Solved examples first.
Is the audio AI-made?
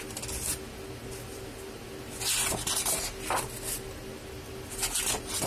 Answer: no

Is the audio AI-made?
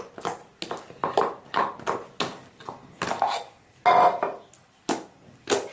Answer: no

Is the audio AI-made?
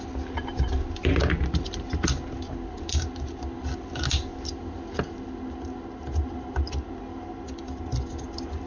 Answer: no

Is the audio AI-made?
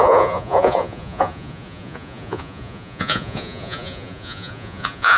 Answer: yes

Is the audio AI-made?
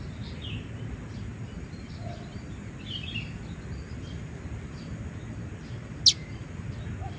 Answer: no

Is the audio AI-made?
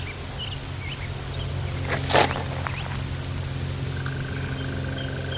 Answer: no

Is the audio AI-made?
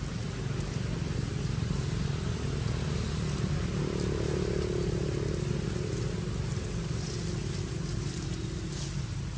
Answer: no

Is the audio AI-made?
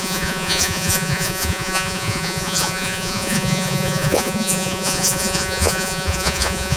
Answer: yes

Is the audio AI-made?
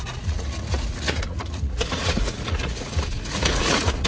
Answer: yes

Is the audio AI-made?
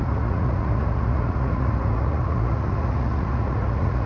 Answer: yes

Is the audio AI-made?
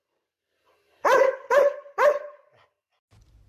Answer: no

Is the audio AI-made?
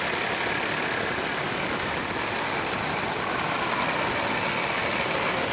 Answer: no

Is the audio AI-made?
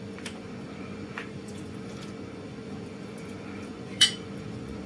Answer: yes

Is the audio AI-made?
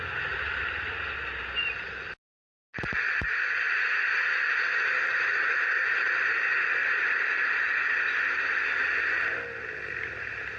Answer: no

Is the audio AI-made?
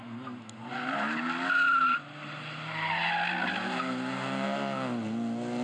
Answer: no